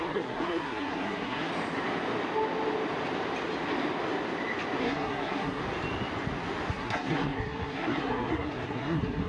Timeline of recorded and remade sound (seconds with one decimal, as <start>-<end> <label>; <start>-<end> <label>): 0.0-1.5 remade; 1.5-4.8 recorded; 4.8-5.6 remade; 5.6-6.7 recorded; 6.7-9.3 remade